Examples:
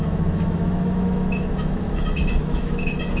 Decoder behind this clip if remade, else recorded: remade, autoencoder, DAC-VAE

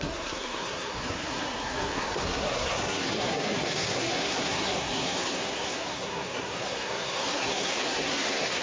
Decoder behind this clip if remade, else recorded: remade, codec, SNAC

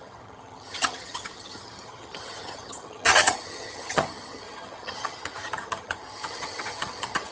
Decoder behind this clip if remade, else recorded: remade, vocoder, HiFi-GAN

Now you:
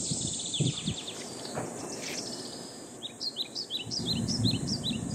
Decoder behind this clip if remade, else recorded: remade, vocoder, BigVGAN v2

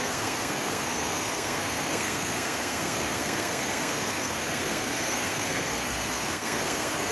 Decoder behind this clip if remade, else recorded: remade, codec, SNAC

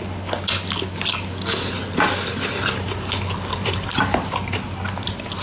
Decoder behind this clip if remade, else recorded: recorded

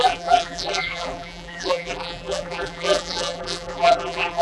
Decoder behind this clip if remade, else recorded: remade, vocoder, BigVGAN v2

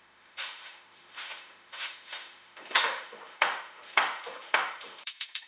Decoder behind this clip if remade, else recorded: remade, autoencoder, DAC-VAE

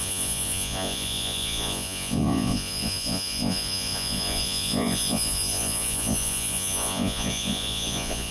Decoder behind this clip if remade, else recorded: remade, vocoder, Vocos